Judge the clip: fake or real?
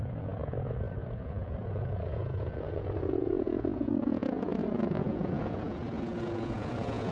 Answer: fake